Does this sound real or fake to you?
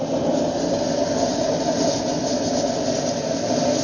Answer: real